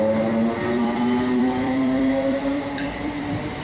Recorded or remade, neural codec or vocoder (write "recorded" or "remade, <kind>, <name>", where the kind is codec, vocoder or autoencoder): remade, vocoder, BigVGAN v2